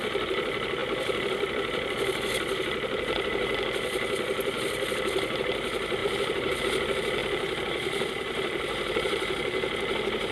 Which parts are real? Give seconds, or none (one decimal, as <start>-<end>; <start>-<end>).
0.0-6.0; 6.6-7.2